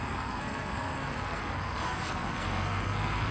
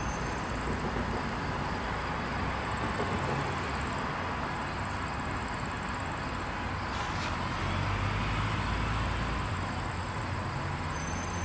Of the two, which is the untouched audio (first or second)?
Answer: second